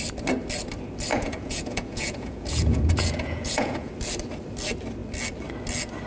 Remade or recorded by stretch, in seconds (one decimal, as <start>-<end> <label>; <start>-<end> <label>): 0.0-1.1 recorded; 1.1-3.9 remade; 3.9-6.1 recorded